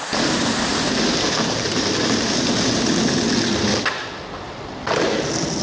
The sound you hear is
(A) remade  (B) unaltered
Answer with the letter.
B